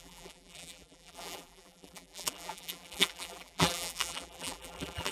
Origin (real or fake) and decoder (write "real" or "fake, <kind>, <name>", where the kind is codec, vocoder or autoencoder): fake, vocoder, BigVGAN v2